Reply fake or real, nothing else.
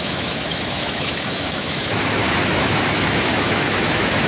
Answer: fake